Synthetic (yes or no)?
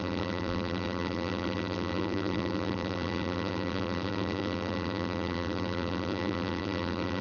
yes